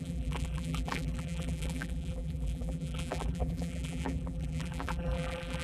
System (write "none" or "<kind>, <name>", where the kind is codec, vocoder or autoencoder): vocoder, BigVGAN v2